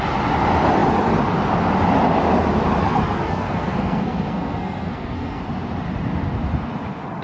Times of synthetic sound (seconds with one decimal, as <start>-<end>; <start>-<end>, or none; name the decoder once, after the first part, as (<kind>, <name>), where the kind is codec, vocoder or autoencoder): 2.8-5.4 (codec, SNAC)